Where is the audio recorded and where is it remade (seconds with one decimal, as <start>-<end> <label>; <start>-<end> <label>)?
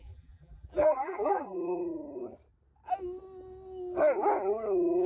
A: 0.0-1.8 remade; 1.8-5.1 recorded